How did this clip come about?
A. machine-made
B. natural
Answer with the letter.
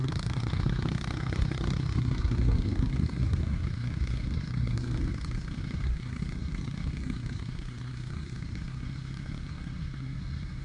A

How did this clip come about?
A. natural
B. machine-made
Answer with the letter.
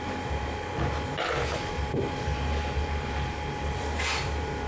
A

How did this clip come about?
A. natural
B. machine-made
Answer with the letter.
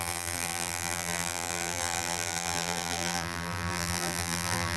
B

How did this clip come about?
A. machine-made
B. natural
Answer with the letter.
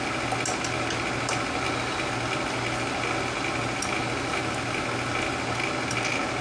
B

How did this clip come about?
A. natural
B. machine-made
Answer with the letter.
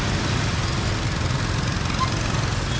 A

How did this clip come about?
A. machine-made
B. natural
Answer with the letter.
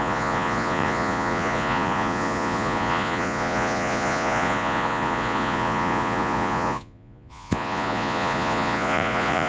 A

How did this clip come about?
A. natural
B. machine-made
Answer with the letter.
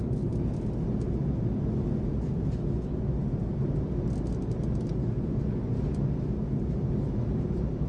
A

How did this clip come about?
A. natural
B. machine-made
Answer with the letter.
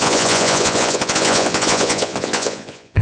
B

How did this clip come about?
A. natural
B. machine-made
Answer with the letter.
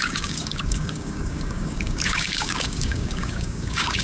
B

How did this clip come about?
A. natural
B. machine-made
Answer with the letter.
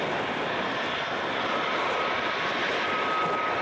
A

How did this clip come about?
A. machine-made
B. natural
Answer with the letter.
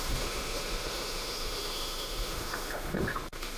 A